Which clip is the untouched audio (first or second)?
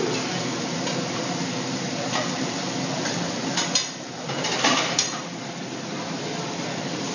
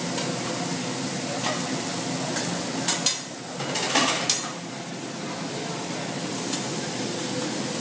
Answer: second